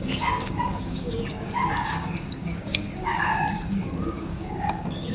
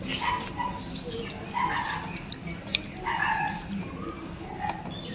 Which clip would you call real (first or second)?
second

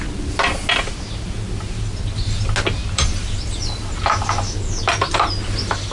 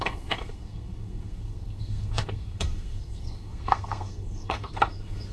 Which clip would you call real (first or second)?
first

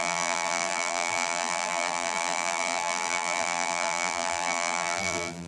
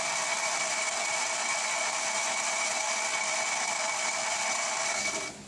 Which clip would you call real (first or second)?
second